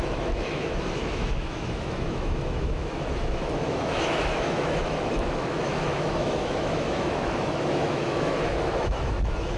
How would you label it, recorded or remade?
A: remade